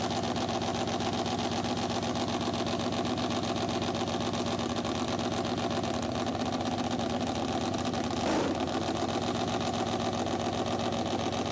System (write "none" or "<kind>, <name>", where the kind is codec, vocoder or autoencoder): none